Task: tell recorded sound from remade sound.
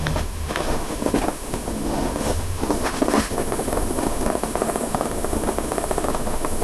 remade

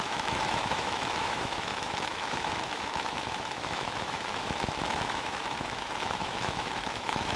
remade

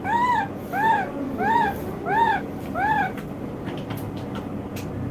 recorded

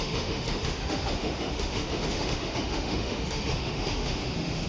remade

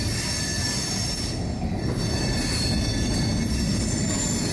recorded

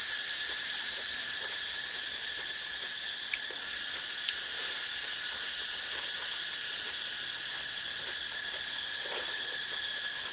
recorded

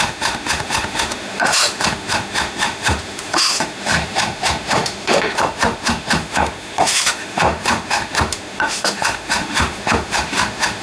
remade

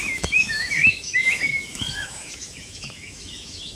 remade